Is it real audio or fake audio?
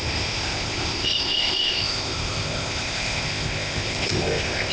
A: fake